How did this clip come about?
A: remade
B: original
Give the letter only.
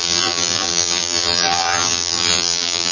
A